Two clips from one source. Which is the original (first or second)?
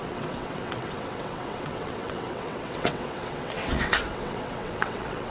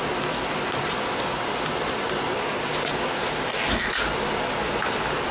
second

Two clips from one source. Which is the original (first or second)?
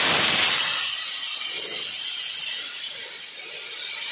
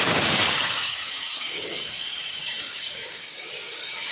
first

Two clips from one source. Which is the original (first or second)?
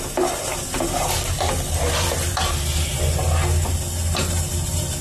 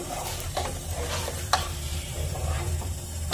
first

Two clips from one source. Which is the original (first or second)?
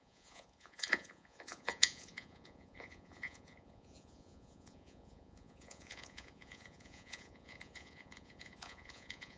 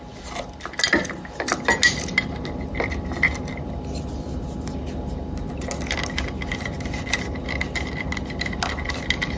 second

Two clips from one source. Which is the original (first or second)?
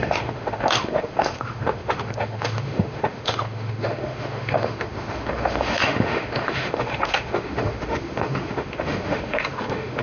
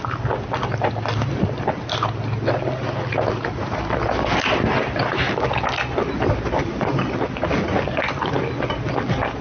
second